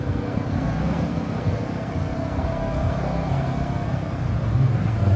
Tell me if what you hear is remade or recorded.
remade